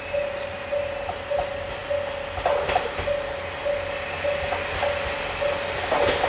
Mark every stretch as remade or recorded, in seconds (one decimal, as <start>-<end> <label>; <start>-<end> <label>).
0.0-6.3 recorded